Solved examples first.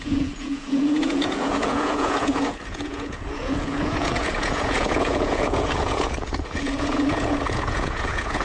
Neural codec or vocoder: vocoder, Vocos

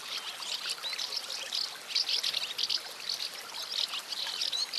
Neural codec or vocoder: none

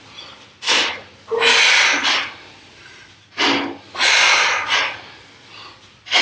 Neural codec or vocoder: none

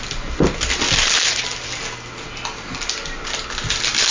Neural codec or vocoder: none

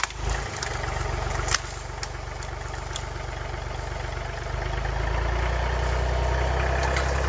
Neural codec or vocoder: none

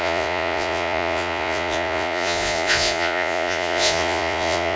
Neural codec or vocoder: vocoder, Vocos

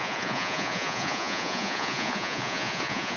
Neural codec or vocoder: vocoder, Vocos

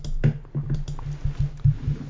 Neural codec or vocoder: none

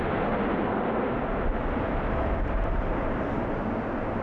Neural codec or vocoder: none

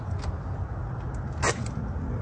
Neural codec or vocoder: none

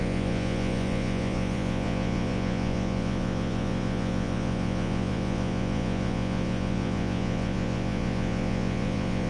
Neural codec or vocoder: vocoder, Vocos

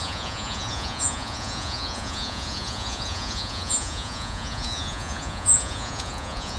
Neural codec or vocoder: vocoder, Vocos